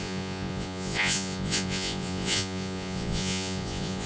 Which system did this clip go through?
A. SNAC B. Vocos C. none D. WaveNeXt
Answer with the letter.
B